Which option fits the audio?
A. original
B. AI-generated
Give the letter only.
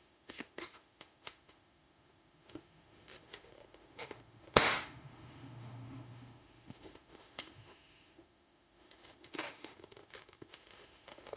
B